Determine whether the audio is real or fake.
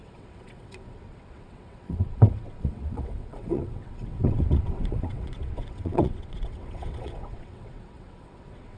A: fake